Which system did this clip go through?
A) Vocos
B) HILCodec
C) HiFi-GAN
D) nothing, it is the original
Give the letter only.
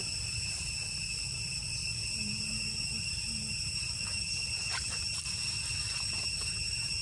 D